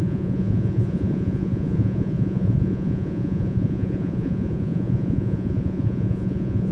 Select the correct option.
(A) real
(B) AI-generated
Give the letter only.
B